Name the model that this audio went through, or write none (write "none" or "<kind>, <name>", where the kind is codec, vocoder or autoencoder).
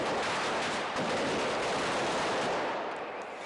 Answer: none